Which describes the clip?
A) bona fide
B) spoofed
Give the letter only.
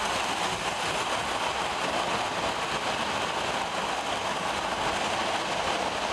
A